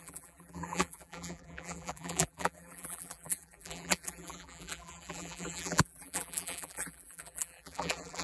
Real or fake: fake